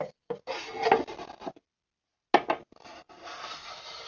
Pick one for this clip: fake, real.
real